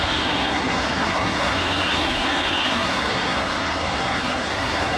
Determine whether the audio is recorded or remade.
remade